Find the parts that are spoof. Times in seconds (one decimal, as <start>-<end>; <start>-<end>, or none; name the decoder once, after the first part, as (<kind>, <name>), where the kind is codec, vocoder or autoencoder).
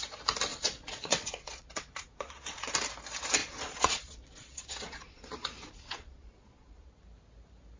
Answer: 0.5-2.7 (vocoder, Vocos); 3.4-7.0